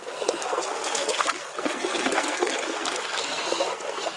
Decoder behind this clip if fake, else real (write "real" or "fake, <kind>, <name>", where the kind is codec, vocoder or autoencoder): fake, codec, SNAC